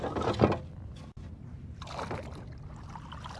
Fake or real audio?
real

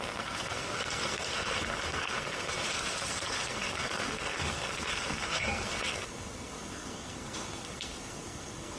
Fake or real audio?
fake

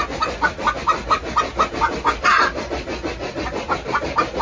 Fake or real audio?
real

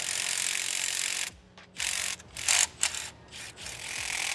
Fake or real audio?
real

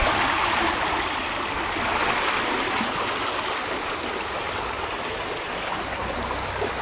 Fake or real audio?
real